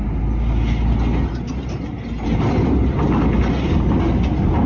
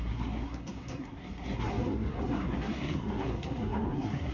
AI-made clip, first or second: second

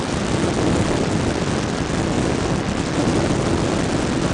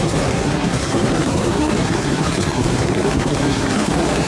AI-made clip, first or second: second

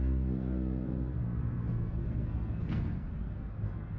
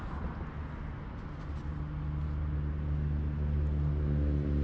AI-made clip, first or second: first